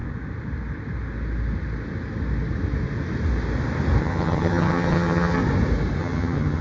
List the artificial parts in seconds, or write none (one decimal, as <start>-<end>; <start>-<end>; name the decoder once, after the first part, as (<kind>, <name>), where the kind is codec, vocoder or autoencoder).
4.0-5.4 (vocoder, HiFi-GAN); 6.0-6.6